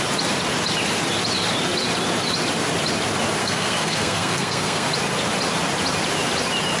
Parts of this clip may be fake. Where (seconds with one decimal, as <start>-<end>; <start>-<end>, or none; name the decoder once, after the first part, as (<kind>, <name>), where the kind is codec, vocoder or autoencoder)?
3.4-4.9 (codec, SNAC)